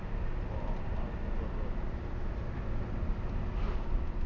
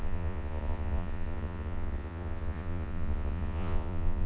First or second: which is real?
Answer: first